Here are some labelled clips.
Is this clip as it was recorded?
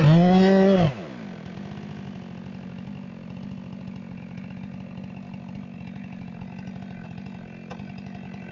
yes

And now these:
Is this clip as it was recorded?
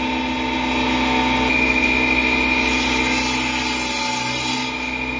yes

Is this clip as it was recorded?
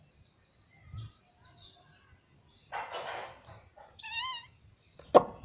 yes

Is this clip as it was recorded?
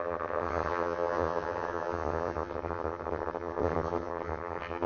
no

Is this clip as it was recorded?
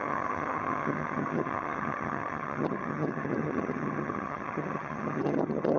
no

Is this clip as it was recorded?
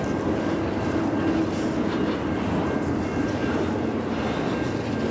yes